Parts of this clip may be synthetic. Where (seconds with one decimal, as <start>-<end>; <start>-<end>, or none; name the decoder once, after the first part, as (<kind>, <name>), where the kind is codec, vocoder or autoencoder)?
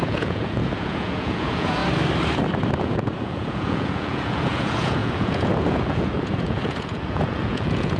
0.0-1.8 (vocoder, Vocos); 2.8-8.0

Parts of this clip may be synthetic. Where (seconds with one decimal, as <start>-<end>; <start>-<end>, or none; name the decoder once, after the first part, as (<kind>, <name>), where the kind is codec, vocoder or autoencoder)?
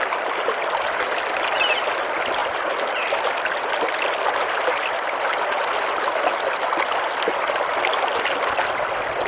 none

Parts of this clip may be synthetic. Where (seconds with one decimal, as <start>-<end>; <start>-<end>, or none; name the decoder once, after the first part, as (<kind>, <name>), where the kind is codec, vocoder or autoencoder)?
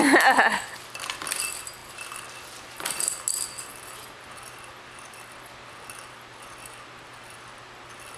none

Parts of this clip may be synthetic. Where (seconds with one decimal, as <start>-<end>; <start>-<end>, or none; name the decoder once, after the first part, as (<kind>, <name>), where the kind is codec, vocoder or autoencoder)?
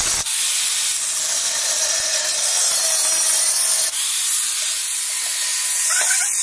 5.5-6.4 (vocoder, Vocos)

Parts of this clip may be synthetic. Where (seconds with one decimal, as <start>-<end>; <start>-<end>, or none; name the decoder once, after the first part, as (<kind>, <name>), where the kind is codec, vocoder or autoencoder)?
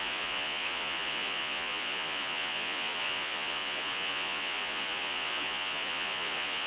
0.0-6.7 (vocoder, Vocos)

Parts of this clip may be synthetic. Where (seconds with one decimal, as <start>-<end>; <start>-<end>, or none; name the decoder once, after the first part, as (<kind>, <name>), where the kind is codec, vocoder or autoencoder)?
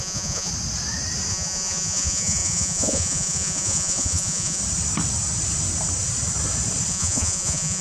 0.0-0.5 (vocoder, Vocos); 1.3-4.6; 6.9-7.8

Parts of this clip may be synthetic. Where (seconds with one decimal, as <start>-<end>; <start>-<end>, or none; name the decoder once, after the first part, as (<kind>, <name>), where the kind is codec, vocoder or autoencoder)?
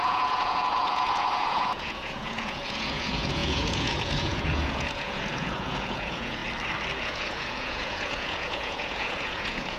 0.0-6.4 (vocoder, Vocos); 7.0-9.8